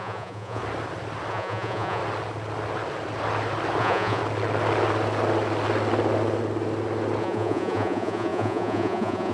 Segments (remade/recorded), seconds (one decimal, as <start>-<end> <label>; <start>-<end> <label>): 0.0-0.6 remade; 0.6-1.3 recorded; 1.3-2.0 remade; 2.0-3.8 recorded; 3.8-4.2 remade; 4.2-7.2 recorded; 7.2-9.3 remade